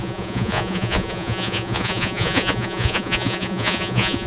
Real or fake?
fake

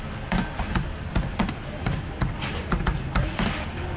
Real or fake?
real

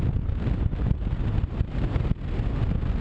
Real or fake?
real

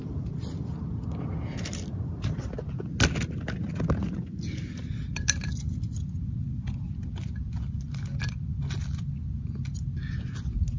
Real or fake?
real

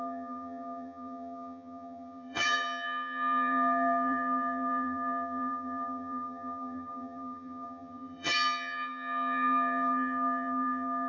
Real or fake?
fake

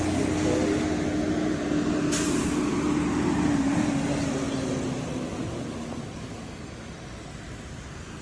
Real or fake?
real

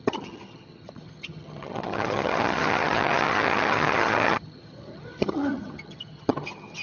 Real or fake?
fake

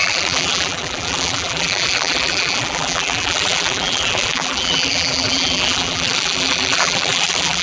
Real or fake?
fake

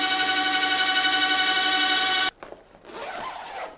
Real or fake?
real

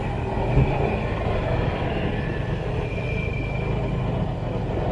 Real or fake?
real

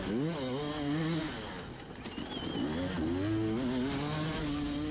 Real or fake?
real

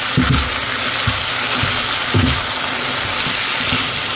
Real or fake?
real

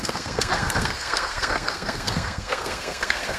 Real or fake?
fake